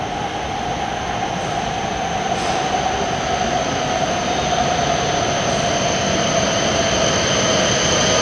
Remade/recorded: recorded